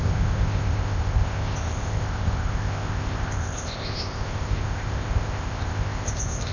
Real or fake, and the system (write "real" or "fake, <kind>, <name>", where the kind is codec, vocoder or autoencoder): fake, codec, ZipCodec